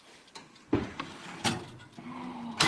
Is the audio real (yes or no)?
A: yes